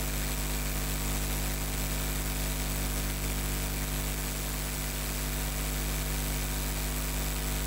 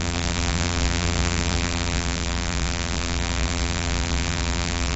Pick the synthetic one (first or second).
second